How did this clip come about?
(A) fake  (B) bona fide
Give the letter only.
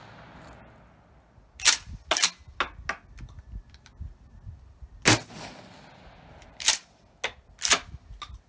B